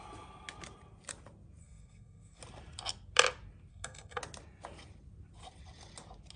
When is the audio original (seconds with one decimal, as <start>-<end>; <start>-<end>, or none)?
0.0-1.6; 2.4-3.7; 4.2-6.4